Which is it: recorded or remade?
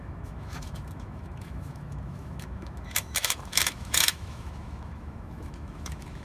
remade